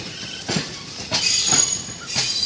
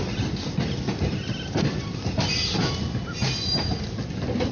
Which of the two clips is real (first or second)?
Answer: second